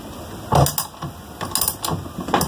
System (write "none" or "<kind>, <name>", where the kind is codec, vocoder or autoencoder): none